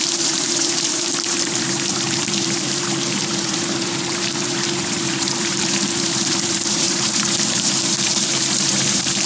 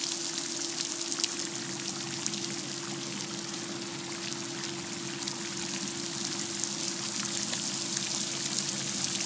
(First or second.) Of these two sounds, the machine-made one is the first